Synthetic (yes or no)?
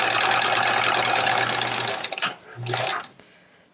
no